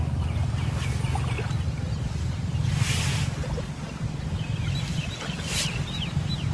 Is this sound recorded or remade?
recorded